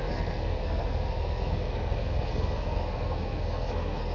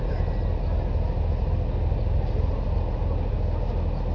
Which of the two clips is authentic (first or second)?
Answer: second